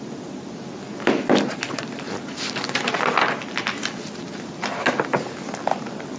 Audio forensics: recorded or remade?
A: recorded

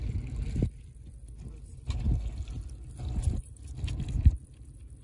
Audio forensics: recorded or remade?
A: recorded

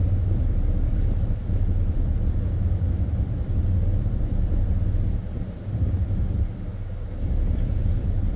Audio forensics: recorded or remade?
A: remade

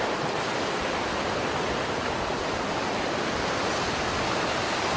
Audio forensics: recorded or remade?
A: recorded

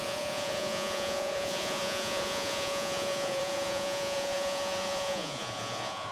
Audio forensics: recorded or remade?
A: remade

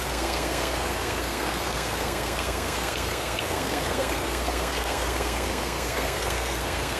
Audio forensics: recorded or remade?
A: remade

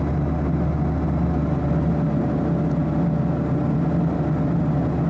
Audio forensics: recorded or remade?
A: recorded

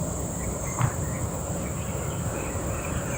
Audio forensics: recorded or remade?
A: remade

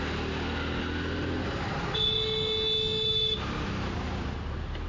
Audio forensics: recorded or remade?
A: recorded